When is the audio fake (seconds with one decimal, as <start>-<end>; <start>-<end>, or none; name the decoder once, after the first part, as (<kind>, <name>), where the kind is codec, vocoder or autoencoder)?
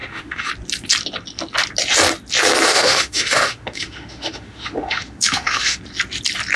0.0-0.5 (autoencoder, DAC-VAE); 2.7-5.8